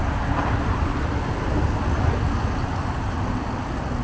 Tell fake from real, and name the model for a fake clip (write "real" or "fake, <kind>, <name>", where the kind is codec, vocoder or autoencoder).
real